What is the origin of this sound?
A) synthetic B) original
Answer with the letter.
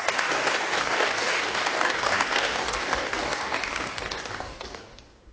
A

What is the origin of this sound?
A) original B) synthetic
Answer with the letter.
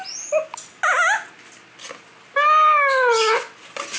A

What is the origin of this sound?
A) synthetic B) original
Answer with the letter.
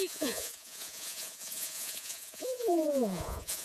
A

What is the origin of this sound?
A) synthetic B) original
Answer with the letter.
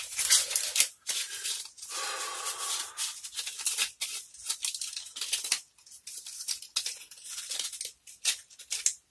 B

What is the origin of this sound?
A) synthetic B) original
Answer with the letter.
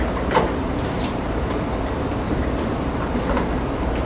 A